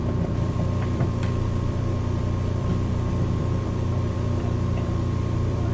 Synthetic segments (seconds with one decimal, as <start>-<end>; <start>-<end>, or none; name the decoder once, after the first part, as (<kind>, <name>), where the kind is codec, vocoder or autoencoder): 0.0-5.7 (vocoder, BigVGAN v2)

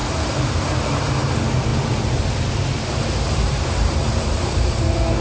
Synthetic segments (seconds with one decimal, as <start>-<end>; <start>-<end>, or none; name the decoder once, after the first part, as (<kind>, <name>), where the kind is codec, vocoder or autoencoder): 0.0-1.1 (vocoder, BigVGAN v2); 1.7-4.8

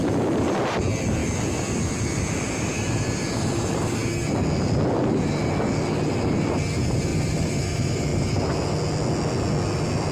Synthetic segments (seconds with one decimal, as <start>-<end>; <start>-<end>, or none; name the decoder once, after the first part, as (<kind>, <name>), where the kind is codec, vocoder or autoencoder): 1.2-3.2 (vocoder, BigVGAN v2); 7.1-7.6

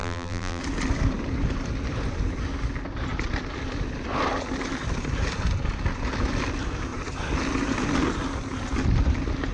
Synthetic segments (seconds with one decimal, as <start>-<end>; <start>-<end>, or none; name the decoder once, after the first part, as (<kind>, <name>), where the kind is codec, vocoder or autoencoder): 0.0-0.6 (vocoder, BigVGAN v2)

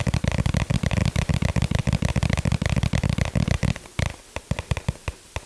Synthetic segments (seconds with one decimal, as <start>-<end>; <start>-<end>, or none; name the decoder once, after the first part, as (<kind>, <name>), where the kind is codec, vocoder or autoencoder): none